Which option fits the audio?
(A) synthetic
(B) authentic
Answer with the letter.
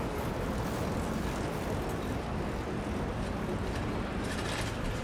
B